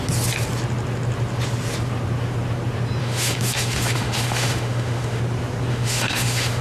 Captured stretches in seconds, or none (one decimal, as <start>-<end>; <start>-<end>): 0.0-3.0; 5.2-5.7